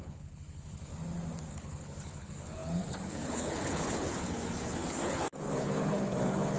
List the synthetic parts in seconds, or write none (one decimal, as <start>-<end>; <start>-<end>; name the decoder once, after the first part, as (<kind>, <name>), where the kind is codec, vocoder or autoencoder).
0.0-0.9 (codec, HILCodec); 1.5-6.6